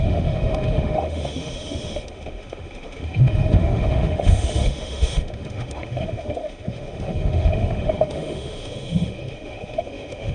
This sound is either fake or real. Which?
fake